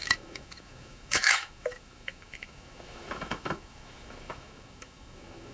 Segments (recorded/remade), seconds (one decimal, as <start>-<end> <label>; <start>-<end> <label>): 0.0-5.5 remade